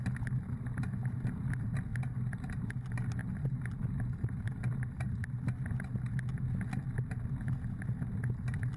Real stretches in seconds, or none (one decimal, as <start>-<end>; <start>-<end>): 0.0-3.2; 4.6-8.8